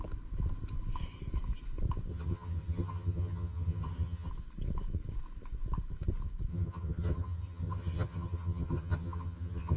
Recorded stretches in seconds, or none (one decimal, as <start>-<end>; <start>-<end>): 0.0-2.1; 4.3-6.5